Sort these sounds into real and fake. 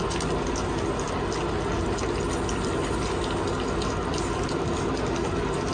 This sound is real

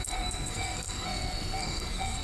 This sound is fake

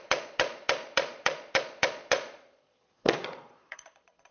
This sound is fake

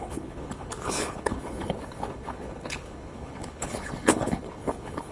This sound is fake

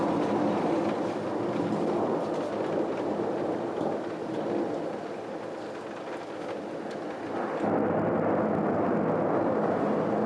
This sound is real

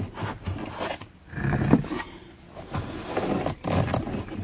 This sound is real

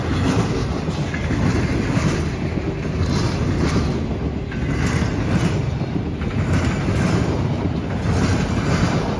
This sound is real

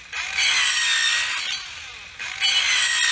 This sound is real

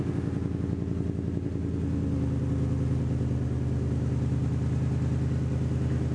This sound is real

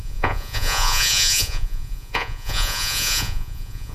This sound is fake